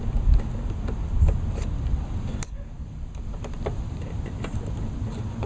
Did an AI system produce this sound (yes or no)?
no